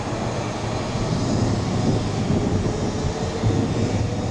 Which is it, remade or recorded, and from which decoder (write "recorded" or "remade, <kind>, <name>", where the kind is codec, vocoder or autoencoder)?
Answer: recorded